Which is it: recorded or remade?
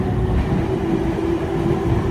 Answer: recorded